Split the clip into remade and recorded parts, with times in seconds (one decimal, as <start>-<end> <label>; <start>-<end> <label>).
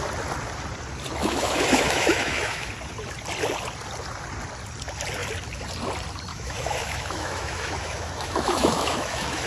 0.0-1.2 recorded; 1.2-2.7 remade; 2.7-6.3 recorded; 6.3-9.5 remade